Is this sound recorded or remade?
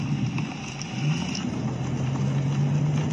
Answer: recorded